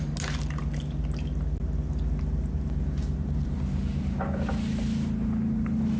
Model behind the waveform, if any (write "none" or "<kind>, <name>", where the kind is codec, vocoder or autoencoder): none